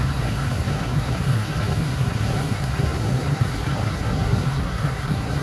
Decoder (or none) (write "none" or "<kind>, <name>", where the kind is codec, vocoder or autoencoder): codec, SNAC